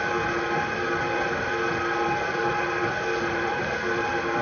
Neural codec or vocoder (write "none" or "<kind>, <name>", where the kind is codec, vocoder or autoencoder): none